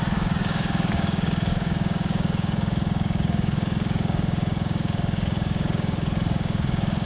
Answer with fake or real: fake